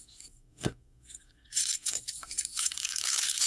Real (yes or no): no